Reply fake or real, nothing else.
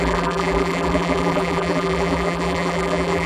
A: fake